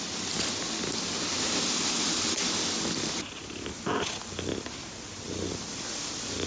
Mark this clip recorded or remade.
recorded